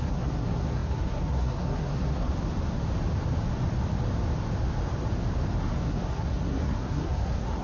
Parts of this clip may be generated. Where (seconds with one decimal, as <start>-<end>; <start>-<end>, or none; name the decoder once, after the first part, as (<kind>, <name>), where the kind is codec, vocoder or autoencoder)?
0.0-2.3 (codec, SNAC); 5.6-7.6

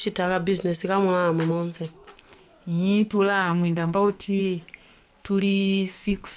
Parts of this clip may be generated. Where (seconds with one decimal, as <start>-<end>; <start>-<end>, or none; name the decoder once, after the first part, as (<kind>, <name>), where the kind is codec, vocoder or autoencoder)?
1.5-2.5 (codec, SNAC); 3.1-4.4; 5.0-6.4

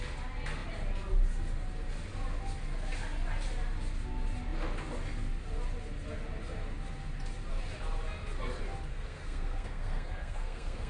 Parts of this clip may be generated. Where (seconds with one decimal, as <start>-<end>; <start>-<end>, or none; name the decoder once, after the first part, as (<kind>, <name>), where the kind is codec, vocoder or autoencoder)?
8.9-10.9 (codec, SNAC)

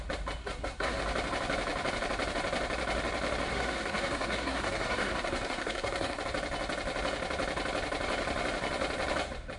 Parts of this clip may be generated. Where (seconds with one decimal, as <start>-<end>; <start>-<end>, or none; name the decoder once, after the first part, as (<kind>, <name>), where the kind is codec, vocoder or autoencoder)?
0.4-1.0 (codec, SNAC); 3.5-6.2

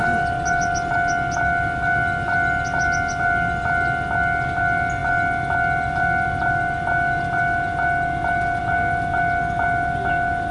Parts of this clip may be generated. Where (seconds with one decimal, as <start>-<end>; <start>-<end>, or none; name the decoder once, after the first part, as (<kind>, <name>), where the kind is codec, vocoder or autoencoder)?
none

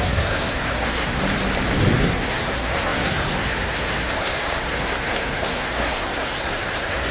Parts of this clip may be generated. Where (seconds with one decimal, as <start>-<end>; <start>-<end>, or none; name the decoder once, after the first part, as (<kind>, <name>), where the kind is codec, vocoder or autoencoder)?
0.0-1.2 (codec, SNAC); 2.0-7.1

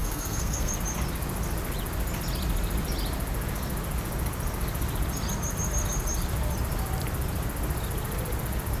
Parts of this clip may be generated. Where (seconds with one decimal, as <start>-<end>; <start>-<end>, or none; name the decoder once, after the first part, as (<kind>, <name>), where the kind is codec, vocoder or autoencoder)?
0.0-0.7 (codec, SNAC)

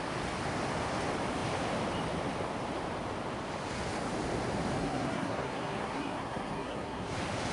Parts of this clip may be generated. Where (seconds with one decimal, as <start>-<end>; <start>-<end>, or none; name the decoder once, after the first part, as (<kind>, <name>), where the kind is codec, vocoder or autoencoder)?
4.8-7.1 (codec, SNAC)